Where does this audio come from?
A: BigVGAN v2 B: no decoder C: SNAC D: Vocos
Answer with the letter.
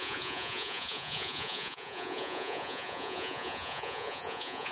D